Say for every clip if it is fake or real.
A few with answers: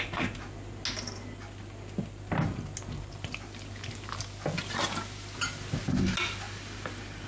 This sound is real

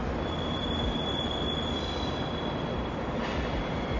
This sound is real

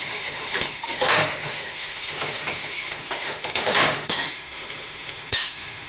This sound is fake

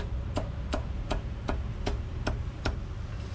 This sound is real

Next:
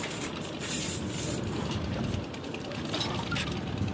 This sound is fake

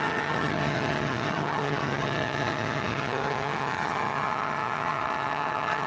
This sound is fake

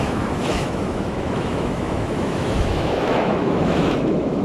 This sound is fake